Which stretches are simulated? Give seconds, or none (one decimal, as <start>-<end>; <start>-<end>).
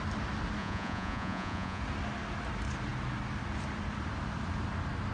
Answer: 0.6-1.8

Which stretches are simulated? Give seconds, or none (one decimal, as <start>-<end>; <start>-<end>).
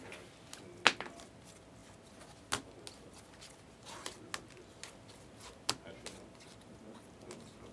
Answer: none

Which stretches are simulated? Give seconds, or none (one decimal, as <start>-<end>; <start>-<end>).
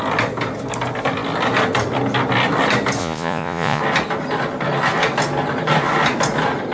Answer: 3.0-3.8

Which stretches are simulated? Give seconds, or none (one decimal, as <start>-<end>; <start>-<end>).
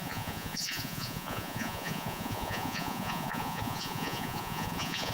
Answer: 0.0-5.1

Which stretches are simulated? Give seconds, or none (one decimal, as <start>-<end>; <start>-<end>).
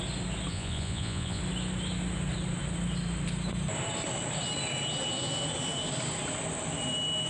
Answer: 0.5-1.4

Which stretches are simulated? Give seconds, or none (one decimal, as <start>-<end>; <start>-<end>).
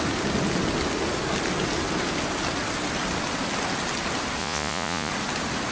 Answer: 4.4-5.1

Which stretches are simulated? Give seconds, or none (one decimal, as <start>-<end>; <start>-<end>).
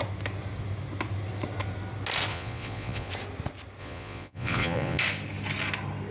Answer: 2.3-3.1; 3.8-5.0